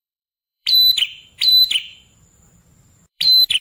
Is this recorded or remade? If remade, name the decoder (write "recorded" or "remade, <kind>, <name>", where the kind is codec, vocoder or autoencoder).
remade, vocoder, BigVGAN v2